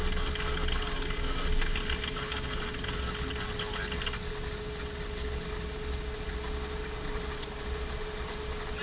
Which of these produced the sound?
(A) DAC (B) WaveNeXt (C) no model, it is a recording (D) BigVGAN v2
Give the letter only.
C